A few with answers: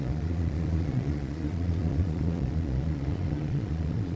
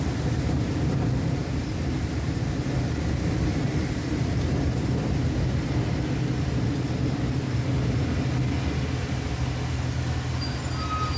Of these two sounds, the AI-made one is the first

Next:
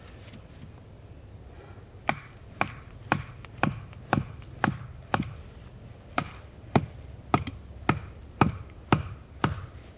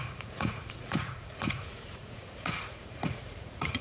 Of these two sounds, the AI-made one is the second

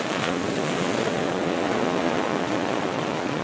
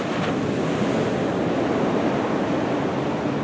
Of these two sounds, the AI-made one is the first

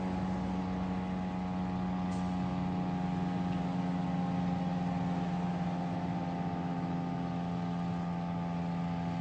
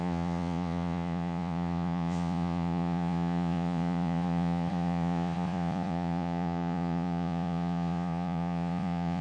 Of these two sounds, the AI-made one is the second